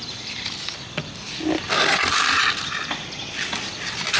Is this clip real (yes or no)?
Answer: yes